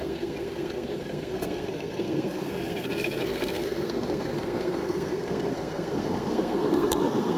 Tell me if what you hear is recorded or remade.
remade